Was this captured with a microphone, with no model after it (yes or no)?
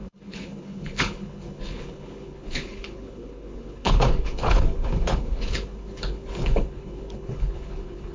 no